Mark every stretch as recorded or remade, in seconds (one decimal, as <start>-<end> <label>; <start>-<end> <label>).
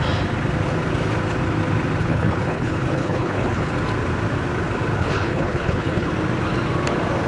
0.0-2.0 recorded; 2.0-3.7 remade; 3.7-5.0 recorded; 5.0-6.1 remade; 6.1-7.3 recorded